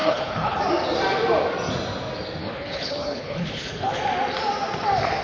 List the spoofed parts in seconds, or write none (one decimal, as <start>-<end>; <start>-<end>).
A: 0.0-0.6; 2.4-4.0